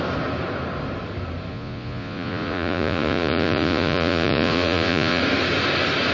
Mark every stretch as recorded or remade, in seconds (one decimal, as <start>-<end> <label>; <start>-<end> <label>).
0.0-1.5 recorded; 1.5-5.2 remade; 5.2-6.1 recorded